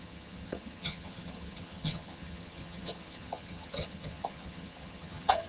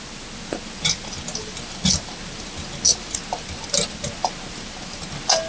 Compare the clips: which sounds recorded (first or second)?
second